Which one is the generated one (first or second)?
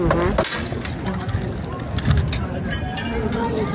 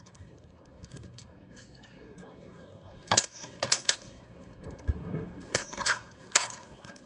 second